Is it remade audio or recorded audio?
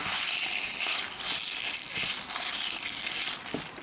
recorded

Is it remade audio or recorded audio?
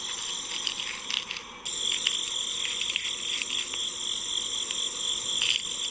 recorded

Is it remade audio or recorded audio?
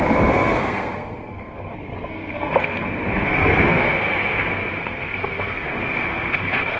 remade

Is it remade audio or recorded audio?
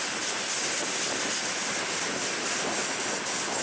recorded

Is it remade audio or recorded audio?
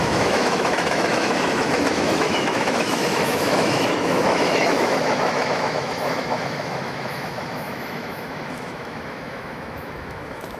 remade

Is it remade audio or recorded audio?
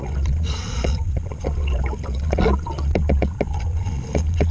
remade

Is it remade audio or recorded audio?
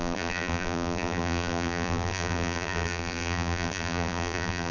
remade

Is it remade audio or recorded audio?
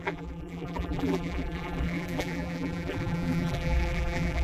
remade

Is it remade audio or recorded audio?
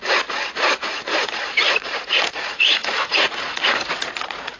remade